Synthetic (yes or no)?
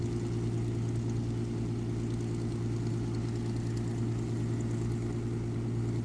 no